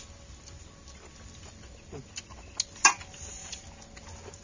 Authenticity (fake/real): real